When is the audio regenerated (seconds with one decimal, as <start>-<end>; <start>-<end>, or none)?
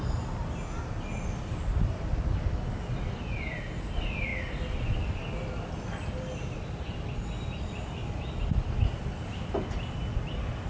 none